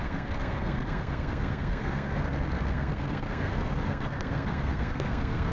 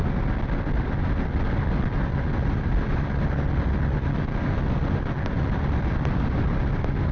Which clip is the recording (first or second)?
second